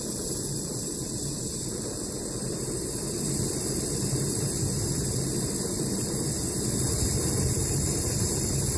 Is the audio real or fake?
fake